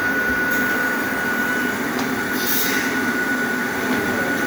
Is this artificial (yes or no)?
yes